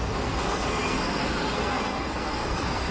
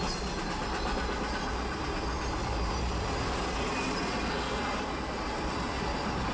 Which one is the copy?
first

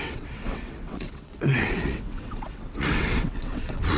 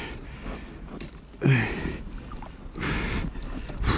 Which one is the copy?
first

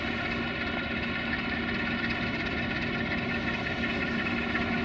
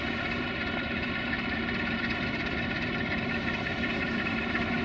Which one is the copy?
second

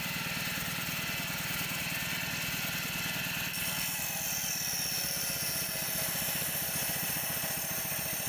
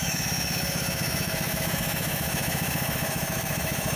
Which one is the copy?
second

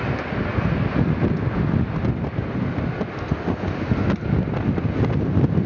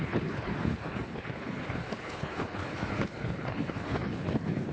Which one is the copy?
second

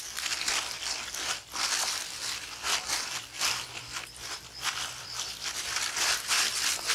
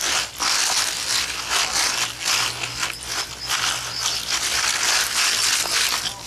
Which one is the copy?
first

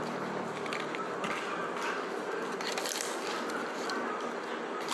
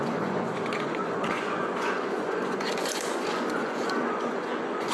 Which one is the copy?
second